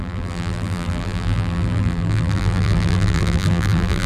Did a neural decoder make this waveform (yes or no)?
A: yes